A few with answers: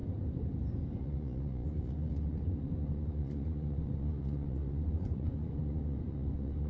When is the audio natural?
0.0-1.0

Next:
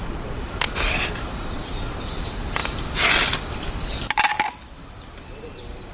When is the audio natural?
0.0-5.9

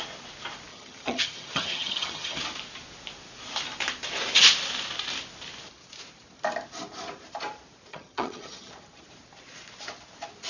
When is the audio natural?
0.0-0.7; 2.4-7.9; 8.7-10.5